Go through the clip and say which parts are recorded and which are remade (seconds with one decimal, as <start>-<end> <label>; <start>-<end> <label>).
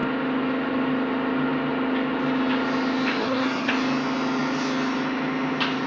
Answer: 0.0-3.2 recorded; 3.2-3.7 remade; 3.7-5.9 recorded